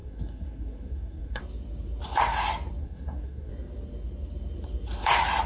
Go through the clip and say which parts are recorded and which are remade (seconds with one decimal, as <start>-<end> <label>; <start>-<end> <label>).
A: 0.0-1.4 remade; 1.4-2.8 recorded; 2.8-3.5 remade; 3.5-5.5 recorded